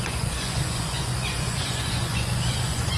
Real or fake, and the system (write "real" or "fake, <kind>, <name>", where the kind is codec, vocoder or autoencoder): fake, vocoder, Vocos